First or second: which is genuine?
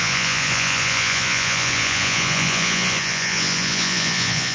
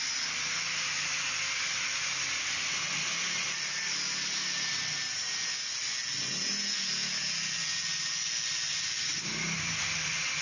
second